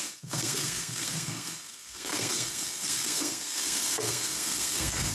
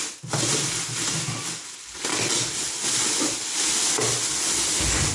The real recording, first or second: second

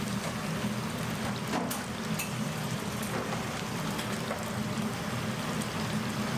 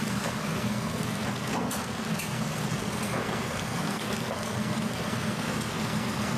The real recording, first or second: first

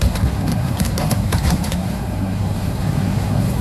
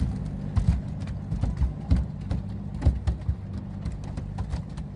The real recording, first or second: second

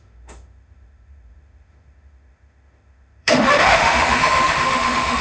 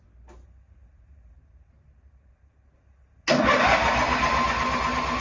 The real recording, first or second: second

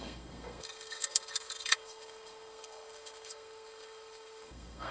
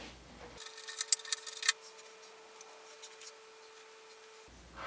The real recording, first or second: second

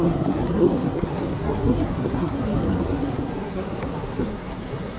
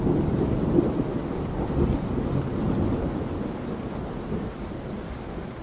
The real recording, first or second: second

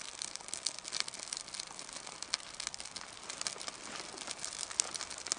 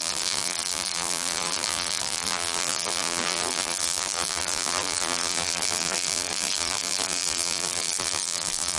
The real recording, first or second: first